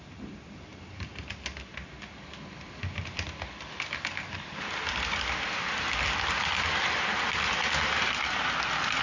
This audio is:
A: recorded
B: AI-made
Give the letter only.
A